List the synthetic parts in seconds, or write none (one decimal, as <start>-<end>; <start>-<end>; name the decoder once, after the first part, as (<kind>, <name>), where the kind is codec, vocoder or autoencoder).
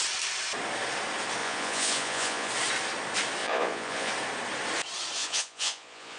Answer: 1.4-2.5 (vocoder, Vocos); 3.4-4.1; 5.2-6.2